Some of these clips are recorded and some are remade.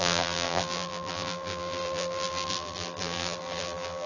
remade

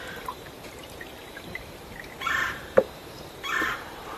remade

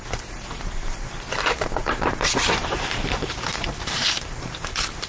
remade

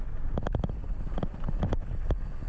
recorded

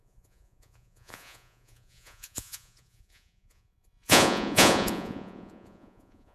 remade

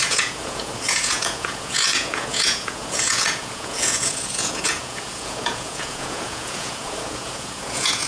remade